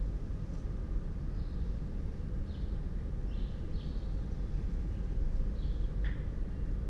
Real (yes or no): yes